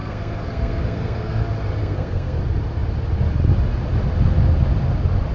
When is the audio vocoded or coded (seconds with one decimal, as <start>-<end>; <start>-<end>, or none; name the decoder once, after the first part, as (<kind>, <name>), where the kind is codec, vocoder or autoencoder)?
0.0-1.4 (codec, SNAC); 1.8-2.4